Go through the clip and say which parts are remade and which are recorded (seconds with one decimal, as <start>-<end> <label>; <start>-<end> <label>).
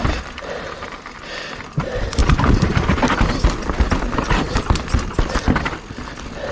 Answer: 0.0-6.5 recorded